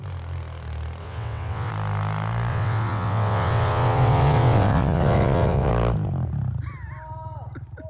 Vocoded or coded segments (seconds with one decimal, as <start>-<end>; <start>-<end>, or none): 1.0-1.7; 2.5-5.7